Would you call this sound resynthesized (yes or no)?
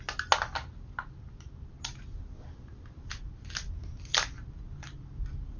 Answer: no